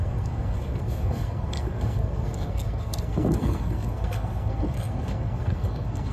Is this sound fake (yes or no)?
yes